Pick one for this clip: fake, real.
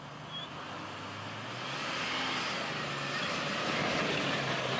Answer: real